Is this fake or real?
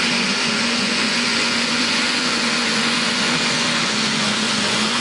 fake